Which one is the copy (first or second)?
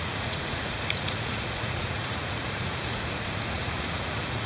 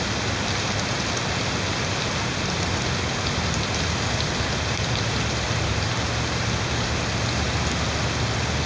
first